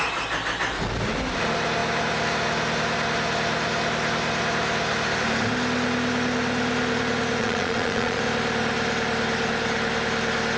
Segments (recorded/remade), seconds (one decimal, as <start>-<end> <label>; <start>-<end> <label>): 0.0-7.4 recorded; 7.4-8.2 remade; 8.2-10.6 recorded